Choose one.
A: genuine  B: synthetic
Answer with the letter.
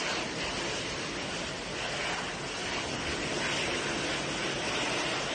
A